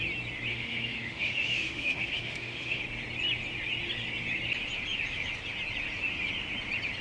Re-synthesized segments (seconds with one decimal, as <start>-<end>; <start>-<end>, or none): 0.5-2.8